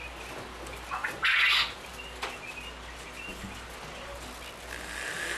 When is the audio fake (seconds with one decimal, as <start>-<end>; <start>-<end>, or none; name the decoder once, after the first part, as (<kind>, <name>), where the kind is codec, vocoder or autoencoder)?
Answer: none